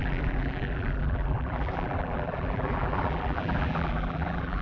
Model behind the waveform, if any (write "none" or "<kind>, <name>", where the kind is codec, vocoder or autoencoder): vocoder, BigVGAN v2